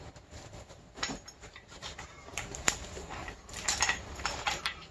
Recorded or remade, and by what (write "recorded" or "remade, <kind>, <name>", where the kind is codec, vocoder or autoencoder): remade, vocoder, BigVGAN v2